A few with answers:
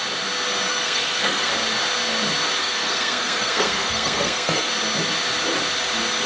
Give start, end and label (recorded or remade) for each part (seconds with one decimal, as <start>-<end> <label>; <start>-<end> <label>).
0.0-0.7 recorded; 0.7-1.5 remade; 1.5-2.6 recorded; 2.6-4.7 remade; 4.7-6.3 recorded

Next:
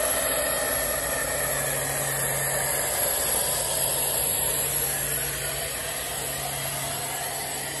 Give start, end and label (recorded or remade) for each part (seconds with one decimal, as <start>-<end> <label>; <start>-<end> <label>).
0.0-5.2 recorded; 5.2-5.9 remade; 5.9-7.8 recorded

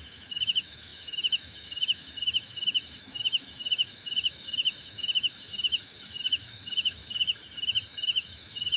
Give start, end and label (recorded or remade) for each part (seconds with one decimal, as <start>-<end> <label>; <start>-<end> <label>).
0.0-7.0 remade; 7.0-7.9 recorded; 7.9-8.8 remade

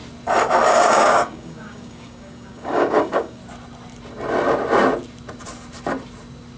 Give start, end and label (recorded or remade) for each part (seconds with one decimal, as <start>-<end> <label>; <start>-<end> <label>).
0.0-0.7 recorded; 0.7-3.4 remade; 3.4-6.6 recorded

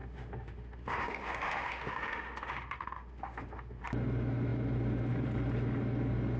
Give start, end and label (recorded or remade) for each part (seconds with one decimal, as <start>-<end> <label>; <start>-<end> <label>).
0.0-3.8 remade; 3.8-6.4 recorded

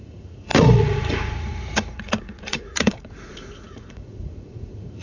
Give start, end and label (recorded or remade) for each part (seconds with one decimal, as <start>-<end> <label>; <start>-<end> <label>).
0.0-5.0 remade

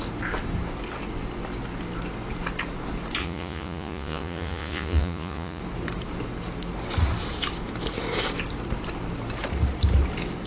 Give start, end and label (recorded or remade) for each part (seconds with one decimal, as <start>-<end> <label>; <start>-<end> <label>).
0.0-3.2 recorded; 3.2-5.6 remade; 5.6-10.5 recorded